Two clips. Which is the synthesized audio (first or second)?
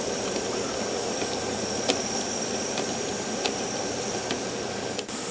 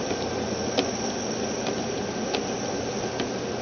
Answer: first